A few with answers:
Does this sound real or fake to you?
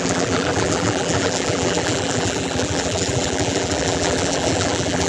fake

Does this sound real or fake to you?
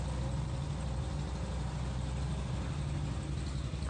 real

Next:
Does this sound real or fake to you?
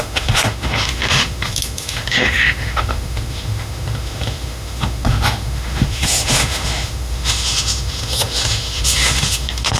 fake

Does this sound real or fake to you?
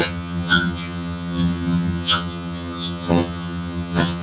fake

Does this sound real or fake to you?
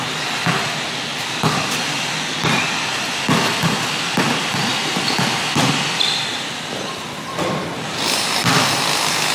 real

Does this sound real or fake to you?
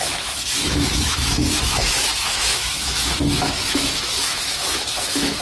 fake